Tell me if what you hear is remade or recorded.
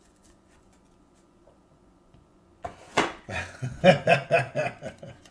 remade